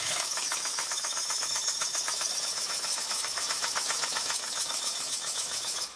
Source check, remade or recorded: remade